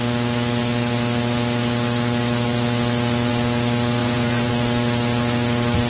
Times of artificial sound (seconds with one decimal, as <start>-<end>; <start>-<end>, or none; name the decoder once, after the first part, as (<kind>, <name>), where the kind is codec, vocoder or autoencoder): 4.0-4.5 (vocoder, Vocos)